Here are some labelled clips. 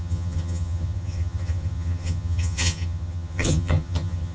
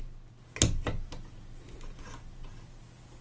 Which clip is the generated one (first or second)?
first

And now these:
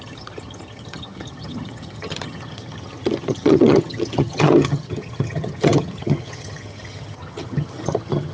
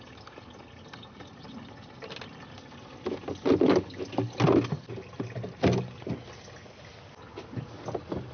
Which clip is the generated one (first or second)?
first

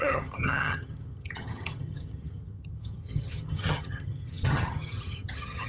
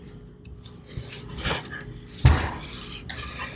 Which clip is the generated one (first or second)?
first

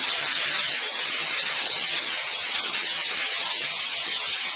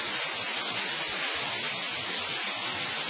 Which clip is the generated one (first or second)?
first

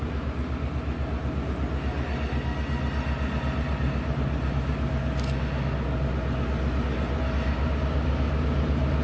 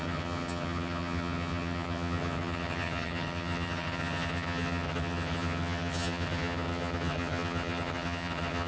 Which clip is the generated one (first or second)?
second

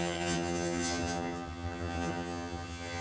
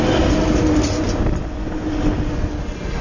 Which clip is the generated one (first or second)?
first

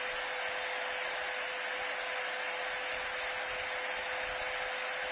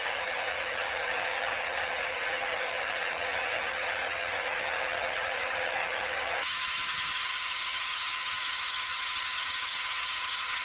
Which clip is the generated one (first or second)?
second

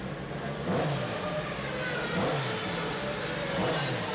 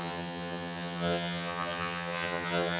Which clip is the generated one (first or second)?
second